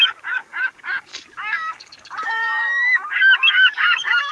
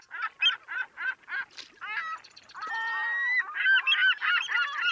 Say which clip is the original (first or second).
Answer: second